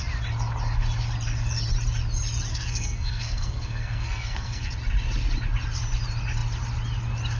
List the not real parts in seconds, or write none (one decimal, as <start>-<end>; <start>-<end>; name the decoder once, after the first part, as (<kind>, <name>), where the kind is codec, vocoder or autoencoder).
2.5-4.7 (codec, SNAC)

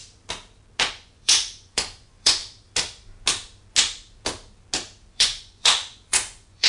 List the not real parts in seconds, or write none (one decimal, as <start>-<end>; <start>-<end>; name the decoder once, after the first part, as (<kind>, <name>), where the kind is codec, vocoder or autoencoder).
0.9-2.4 (vocoder, Vocos); 5.1-6.7

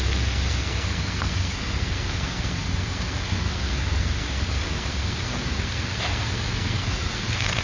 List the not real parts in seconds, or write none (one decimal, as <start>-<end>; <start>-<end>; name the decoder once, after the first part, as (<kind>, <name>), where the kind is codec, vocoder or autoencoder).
0.0-7.6 (codec, SNAC)